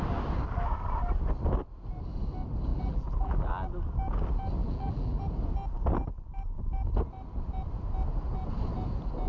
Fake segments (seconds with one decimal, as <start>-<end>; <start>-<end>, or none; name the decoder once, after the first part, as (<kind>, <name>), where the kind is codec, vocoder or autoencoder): 2.7-3.5 (vocoder, BigVGAN v2); 4.6-5.2